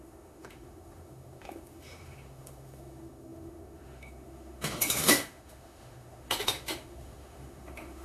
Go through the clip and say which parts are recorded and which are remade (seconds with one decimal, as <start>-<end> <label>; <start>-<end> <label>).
0.0-8.0 remade